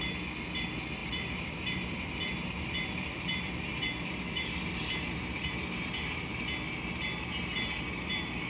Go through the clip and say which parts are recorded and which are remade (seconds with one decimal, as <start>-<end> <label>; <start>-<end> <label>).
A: 0.0-1.0 recorded; 1.0-5.9 remade; 5.9-8.5 recorded